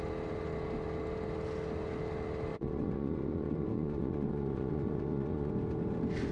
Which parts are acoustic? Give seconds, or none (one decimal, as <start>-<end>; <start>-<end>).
0.0-2.5; 5.5-6.3